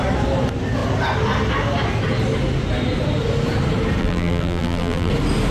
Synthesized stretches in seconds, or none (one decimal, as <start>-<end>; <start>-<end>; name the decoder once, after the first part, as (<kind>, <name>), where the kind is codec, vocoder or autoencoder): 4.0-5.1 (vocoder, BigVGAN v2)